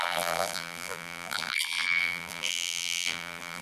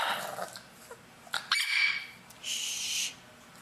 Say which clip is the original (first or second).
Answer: second